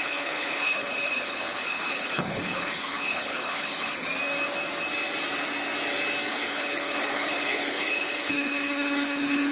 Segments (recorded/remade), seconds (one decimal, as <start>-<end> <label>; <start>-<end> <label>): 0.0-4.1 remade; 4.1-6.3 recorded; 6.3-9.5 remade